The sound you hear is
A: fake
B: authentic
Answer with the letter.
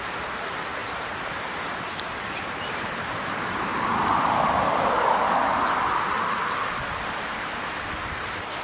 A